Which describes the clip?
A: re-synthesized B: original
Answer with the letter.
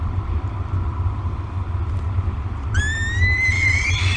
B